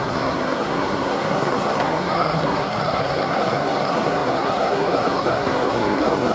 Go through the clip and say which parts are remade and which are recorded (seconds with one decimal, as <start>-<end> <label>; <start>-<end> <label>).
0.0-6.3 remade